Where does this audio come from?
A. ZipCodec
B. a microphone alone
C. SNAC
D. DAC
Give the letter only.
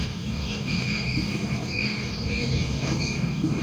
D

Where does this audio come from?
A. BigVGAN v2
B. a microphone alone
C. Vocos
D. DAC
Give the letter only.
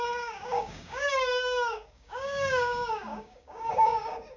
D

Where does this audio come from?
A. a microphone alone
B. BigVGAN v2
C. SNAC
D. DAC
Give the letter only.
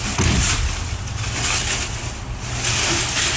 A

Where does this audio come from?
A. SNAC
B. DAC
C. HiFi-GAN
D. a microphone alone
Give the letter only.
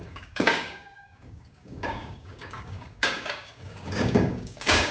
B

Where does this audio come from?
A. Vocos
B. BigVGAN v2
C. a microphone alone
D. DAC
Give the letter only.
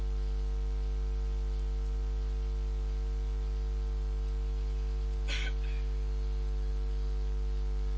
C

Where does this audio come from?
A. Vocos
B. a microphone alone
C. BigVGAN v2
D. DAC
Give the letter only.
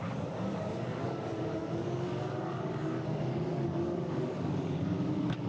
D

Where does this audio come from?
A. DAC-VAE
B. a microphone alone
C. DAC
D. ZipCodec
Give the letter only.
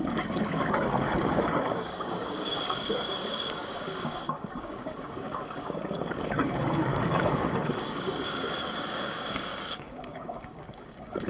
C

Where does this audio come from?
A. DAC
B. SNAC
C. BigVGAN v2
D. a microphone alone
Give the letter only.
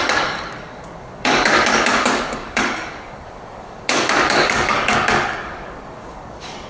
A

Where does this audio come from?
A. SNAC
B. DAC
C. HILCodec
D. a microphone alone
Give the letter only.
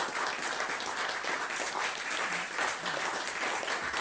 D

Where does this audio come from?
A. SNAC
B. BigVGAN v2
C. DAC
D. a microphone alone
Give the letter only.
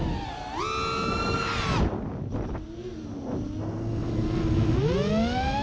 D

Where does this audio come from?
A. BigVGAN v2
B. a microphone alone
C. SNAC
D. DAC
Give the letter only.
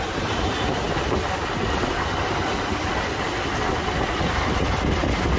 B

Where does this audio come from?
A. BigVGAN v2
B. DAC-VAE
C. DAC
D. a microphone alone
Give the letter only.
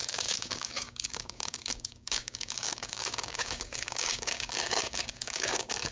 C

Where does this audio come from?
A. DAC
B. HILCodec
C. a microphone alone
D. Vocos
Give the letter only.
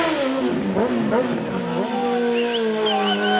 C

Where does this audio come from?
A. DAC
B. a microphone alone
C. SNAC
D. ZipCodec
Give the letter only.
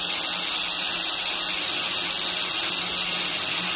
B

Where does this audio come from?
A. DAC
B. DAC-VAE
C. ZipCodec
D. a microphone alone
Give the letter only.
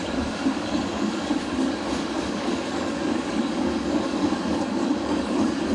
A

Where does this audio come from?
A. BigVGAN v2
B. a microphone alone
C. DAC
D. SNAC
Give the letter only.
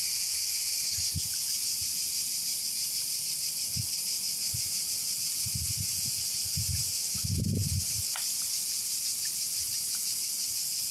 B